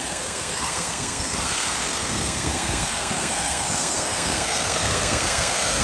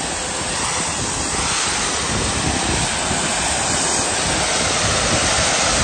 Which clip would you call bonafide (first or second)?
second